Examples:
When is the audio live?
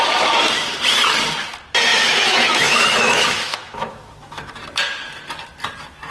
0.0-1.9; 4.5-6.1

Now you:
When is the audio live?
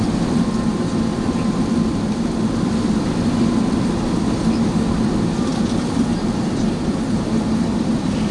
none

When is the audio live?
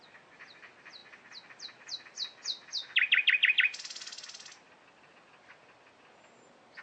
0.0-6.8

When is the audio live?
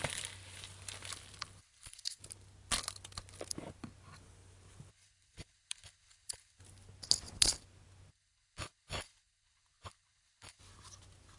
0.0-1.6; 2.2-4.9; 6.6-8.1; 10.6-11.4